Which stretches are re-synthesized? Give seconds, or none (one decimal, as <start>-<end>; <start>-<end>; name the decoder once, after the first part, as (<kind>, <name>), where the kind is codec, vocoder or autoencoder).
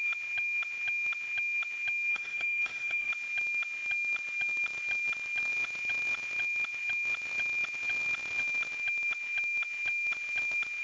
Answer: 2.1-3.1 (autoencoder, DAC-VAE)